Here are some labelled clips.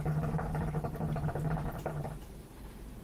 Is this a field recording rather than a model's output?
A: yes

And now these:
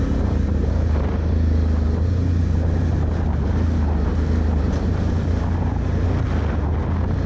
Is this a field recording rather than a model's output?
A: yes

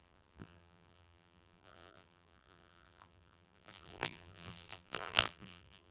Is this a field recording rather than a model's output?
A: no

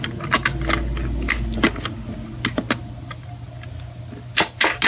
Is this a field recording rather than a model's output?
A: yes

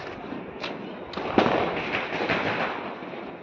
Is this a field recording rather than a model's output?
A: yes